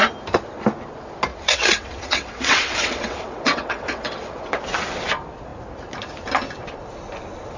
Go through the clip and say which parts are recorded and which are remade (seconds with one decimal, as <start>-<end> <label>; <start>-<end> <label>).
0.0-1.3 recorded; 1.3-4.6 remade; 4.6-7.6 recorded